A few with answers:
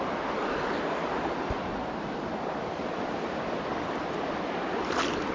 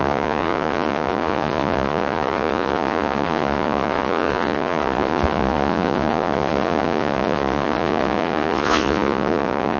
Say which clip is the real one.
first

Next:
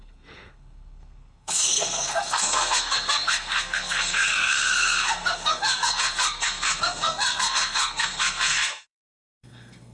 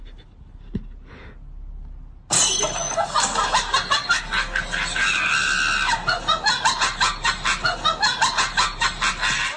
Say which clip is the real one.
second